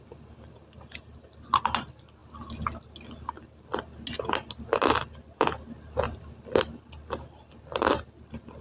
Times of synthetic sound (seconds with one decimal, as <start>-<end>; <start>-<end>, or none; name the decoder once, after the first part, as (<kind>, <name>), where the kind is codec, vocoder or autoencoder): none